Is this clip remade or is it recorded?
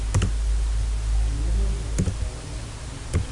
recorded